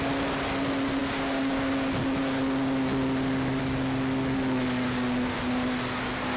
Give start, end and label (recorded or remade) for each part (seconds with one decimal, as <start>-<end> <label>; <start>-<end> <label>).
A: 0.0-6.4 recorded